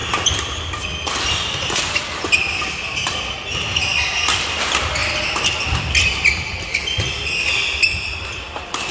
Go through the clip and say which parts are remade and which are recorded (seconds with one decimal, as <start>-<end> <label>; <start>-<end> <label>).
0.0-8.9 recorded